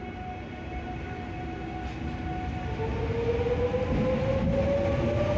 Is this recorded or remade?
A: recorded